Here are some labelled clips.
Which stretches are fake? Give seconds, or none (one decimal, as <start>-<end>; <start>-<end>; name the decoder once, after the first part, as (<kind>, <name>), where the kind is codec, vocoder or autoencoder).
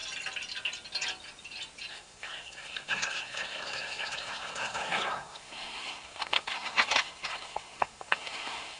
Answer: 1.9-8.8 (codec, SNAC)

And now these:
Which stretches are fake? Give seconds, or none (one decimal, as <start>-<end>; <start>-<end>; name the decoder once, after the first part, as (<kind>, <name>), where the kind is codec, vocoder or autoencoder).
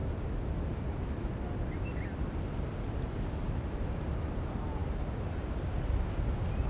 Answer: none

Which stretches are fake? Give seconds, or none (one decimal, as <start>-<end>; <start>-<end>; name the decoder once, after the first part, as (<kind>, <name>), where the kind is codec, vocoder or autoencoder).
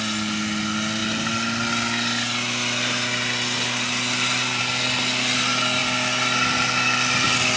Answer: none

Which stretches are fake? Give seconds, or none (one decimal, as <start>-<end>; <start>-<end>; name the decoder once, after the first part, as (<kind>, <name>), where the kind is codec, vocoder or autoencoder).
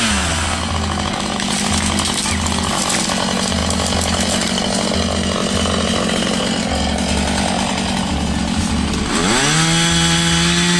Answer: none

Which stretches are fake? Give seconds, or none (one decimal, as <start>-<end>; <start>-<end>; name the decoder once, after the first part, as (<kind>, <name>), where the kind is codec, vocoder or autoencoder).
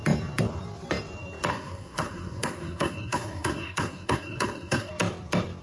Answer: 1.5-4.9 (codec, SNAC)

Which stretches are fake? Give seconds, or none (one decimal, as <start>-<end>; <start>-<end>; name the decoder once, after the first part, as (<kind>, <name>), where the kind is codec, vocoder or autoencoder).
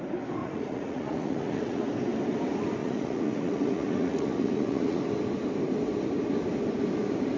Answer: 0.4-1.8 (vocoder, Vocos); 2.8-5.0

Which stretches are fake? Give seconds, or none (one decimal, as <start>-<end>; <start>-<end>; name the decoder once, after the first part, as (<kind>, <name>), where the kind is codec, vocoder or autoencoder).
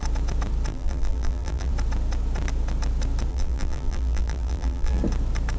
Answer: 0.7-1.7 (vocoder, BigVGAN v2); 3.3-5.0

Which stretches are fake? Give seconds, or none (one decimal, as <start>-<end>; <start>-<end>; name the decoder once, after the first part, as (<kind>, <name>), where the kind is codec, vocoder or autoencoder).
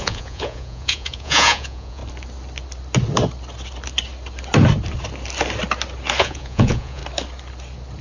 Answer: 0.0-2.0 (vocoder, Vocos); 6.2-7.0